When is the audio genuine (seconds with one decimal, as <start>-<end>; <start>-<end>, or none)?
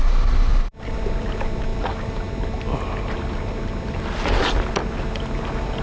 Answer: 0.0-5.8